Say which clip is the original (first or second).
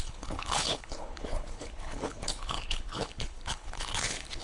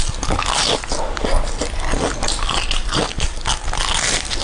second